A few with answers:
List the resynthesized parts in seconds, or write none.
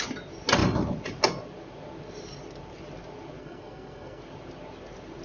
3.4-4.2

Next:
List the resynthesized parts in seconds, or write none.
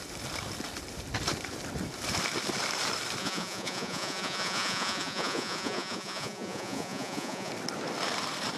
3.2-7.5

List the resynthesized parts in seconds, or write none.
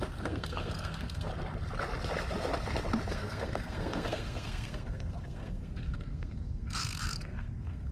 0.0-1.3; 3.1-7.9